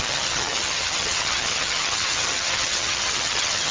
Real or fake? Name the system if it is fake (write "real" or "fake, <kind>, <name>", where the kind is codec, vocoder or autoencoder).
fake, vocoder, HiFi-GAN